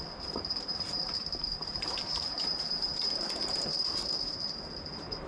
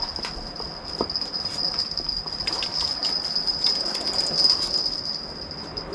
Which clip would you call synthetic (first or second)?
first